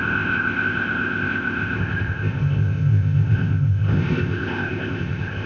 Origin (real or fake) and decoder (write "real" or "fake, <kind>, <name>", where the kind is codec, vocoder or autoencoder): fake, codec, ZipCodec